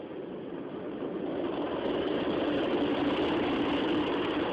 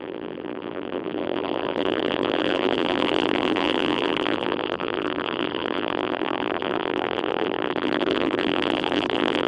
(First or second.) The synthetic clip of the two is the second